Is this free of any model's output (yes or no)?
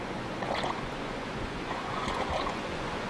no